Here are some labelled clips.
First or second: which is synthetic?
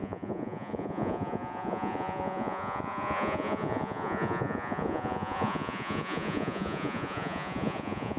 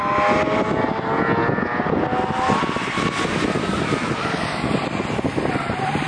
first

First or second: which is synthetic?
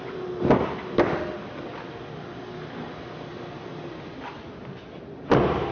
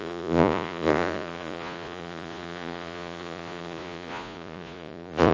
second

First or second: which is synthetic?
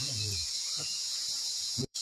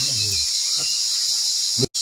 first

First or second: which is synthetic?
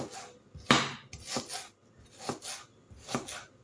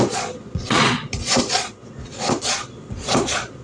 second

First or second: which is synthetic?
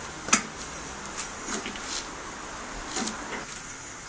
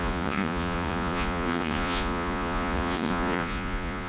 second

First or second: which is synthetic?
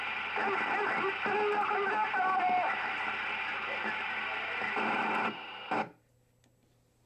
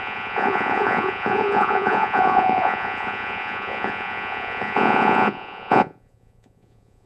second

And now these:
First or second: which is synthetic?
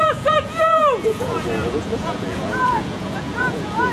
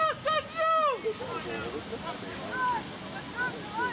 first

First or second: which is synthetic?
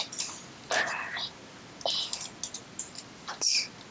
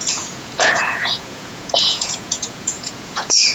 second